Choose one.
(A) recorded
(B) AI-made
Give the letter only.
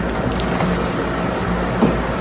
A